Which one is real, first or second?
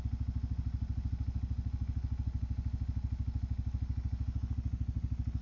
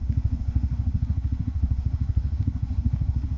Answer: first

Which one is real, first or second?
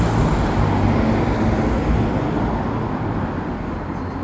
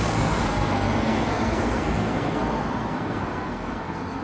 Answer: first